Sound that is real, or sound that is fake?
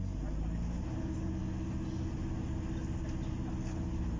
real